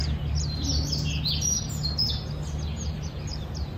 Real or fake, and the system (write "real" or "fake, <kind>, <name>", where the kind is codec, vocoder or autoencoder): real